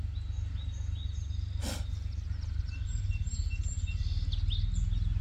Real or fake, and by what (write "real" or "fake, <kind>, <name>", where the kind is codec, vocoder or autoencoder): real